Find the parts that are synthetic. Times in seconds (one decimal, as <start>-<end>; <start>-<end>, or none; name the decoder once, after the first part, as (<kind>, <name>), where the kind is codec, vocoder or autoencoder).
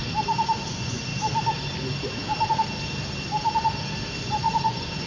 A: 0.7-1.1 (vocoder, Vocos); 4.2-5.1